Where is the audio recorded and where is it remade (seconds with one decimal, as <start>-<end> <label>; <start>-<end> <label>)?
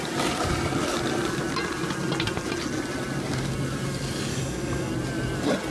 0.0-4.3 recorded; 4.3-4.9 remade; 4.9-5.7 recorded